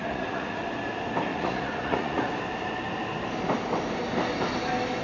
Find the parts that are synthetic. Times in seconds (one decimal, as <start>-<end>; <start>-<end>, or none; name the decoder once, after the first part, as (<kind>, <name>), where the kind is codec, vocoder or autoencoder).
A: 0.0-0.6 (vocoder, Vocos); 1.3-2.3